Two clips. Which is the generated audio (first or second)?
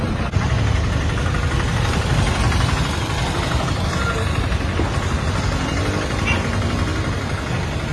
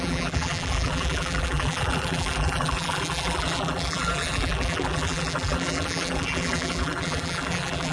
second